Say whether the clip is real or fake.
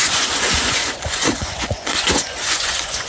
fake